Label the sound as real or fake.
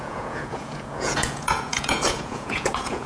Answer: fake